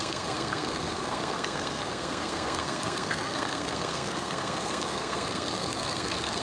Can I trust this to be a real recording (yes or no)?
no